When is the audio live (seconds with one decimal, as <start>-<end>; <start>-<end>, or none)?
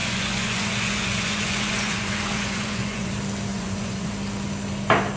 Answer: 3.1-3.5; 4.1-5.2